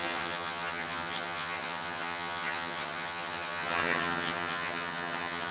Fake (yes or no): yes